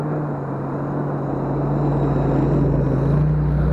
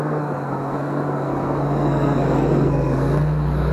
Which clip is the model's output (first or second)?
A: second